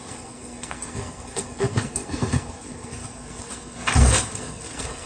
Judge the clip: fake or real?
fake